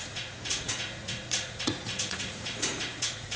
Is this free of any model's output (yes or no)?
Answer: no